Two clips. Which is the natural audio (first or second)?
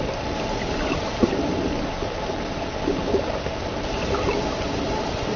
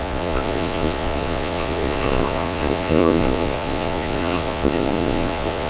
first